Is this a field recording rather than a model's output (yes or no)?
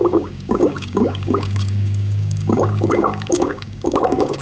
no